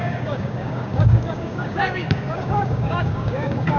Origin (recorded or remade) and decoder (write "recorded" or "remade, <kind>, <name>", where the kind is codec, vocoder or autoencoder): remade, codec, DAC